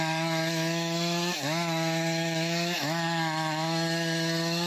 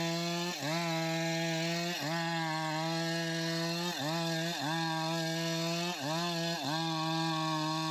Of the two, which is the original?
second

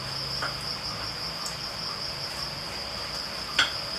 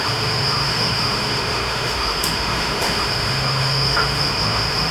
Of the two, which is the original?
first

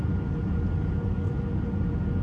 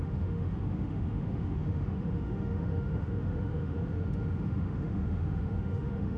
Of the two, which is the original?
first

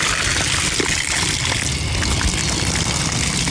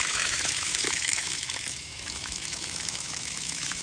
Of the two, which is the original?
first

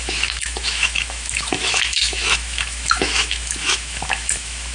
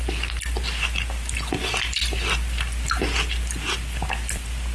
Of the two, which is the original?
second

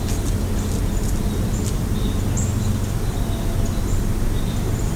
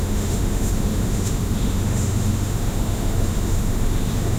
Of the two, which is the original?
first